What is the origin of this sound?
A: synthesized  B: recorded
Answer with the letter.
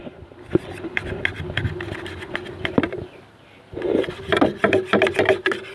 B